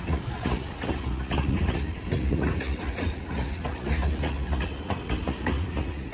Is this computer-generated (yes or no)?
yes